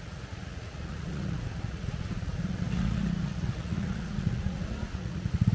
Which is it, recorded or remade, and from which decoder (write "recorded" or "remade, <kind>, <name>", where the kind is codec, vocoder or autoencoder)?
remade, vocoder, Vocos